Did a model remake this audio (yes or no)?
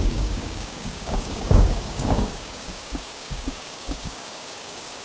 yes